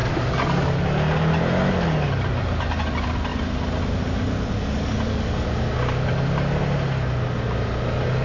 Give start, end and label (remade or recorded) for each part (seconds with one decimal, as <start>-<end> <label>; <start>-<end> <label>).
0.0-8.2 recorded